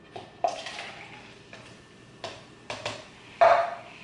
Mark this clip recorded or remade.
recorded